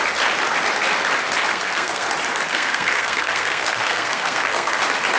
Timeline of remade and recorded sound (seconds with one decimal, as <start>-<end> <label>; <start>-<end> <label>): 0.0-1.5 recorded; 1.5-2.1 remade; 2.1-2.5 recorded; 2.5-4.7 remade; 4.7-5.2 recorded